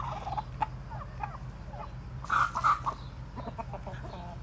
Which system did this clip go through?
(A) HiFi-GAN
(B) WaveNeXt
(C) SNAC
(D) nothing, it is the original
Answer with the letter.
D